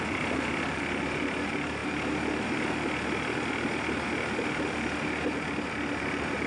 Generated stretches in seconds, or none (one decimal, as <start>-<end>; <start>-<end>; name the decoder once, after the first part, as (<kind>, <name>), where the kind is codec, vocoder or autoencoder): none